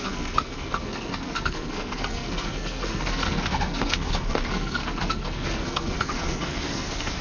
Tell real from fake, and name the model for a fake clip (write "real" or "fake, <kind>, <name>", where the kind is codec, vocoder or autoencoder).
fake, codec, SNAC